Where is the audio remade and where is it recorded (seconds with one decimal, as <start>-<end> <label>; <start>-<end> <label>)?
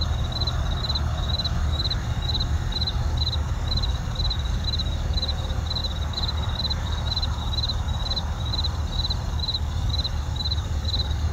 0.0-8.5 remade; 8.5-9.3 recorded; 9.3-11.3 remade